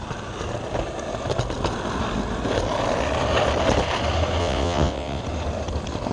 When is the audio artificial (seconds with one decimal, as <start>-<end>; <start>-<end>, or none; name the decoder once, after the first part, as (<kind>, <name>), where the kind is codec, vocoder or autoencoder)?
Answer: 4.4-5.2 (vocoder, WaveNeXt)